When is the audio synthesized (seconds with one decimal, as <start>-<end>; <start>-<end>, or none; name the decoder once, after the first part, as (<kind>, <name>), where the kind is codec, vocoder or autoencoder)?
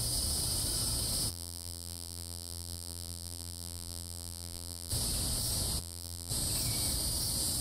1.3-4.9 (vocoder, BigVGAN v2); 5.8-6.3